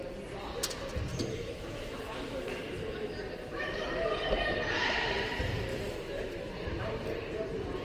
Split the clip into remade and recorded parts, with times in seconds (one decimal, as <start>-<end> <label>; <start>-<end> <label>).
0.0-1.1 recorded; 1.1-3.1 remade; 3.1-5.7 recorded; 5.7-6.5 remade; 6.5-7.8 recorded